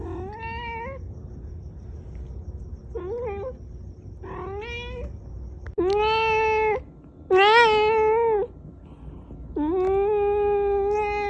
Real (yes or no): yes